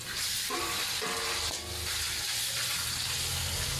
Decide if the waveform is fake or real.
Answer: real